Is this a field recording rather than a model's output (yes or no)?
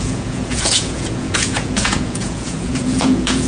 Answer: no